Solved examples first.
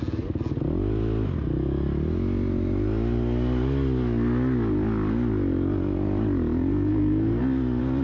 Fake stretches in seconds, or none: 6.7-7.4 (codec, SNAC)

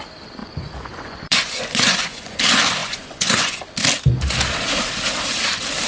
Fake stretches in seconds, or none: 0.4-2.4 (vocoder, Vocos); 2.8-3.6